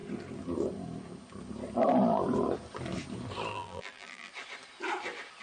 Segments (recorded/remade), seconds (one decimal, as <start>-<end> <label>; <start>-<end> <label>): 0.0-3.5 recorded; 3.5-4.3 remade; 4.3-5.4 recorded